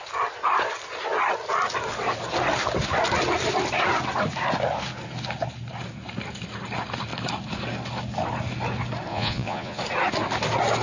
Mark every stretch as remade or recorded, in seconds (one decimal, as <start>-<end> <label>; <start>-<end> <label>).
0.0-9.1 recorded; 9.1-9.8 remade; 9.8-10.8 recorded